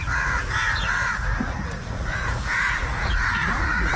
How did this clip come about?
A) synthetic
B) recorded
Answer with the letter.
A